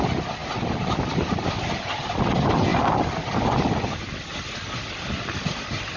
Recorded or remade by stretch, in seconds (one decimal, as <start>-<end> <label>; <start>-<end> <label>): 0.0-6.0 recorded